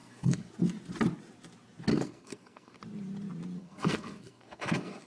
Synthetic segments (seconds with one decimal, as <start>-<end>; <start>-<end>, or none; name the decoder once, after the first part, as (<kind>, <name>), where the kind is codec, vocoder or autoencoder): 0.0-0.5 (codec, SNAC); 1.9-2.8; 3.6-5.1